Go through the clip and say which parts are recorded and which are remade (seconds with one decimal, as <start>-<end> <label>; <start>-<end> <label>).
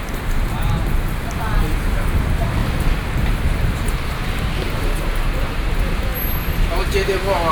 0.0-7.5 recorded